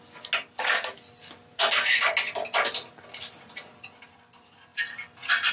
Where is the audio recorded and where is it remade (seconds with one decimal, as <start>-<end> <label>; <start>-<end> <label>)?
0.0-5.5 recorded